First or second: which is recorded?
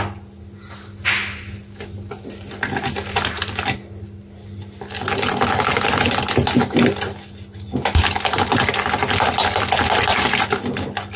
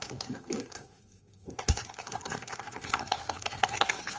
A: first